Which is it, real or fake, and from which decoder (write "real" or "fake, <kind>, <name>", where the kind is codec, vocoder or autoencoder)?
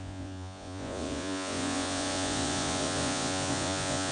fake, vocoder, Vocos